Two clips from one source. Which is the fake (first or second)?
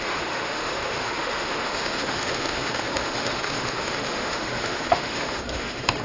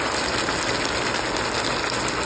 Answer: first